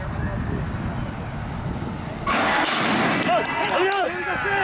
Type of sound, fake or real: real